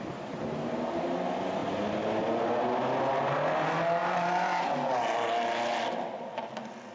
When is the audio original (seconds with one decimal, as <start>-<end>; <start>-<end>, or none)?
0.0-4.0; 4.7-6.9